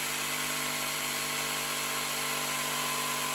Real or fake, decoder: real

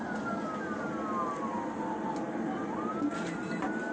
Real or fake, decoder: real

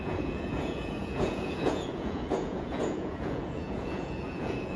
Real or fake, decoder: fake, vocoder, Vocos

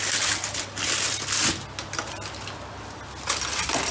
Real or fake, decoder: real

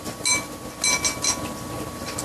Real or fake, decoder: real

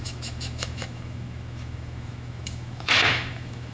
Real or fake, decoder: fake, autoencoder, DAC-VAE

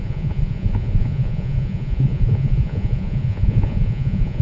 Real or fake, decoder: fake, vocoder, Vocos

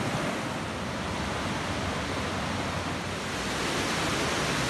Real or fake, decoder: real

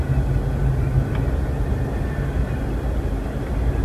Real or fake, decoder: real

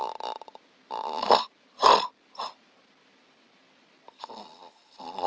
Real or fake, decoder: real